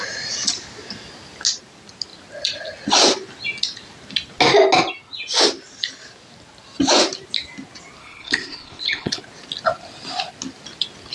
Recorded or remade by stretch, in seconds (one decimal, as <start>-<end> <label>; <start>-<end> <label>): 0.0-8.0 recorded; 8.0-9.2 remade; 9.2-11.1 recorded